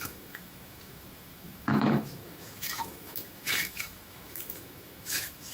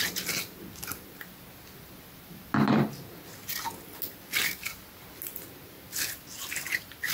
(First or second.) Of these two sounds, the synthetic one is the first